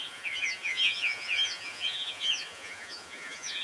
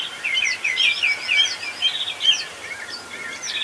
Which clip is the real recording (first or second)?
second